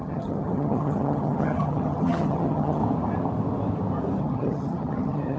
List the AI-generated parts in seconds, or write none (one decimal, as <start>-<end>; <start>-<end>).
0.0-2.8; 4.2-5.4